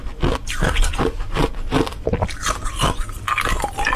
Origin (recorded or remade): recorded